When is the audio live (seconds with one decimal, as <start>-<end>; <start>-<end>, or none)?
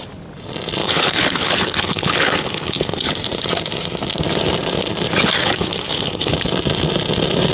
0.0-0.8; 3.1-5.4; 6.3-7.5